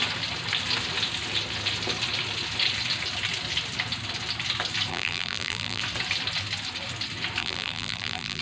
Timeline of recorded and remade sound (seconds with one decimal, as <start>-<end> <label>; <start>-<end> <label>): 0.0-4.9 recorded; 4.9-5.8 remade; 5.8-7.4 recorded; 7.4-8.4 remade